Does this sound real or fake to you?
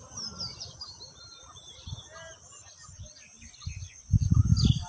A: fake